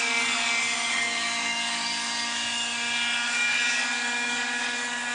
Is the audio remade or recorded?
remade